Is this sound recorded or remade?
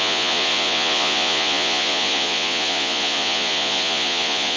remade